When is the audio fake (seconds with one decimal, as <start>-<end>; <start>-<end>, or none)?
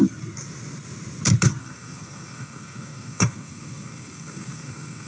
1.6-5.1